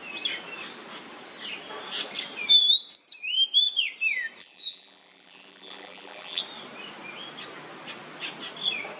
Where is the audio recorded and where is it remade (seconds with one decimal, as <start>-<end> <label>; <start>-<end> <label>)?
0.0-4.4 recorded; 4.4-6.4 remade; 6.4-9.0 recorded